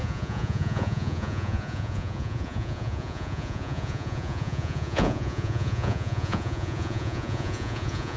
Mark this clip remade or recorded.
remade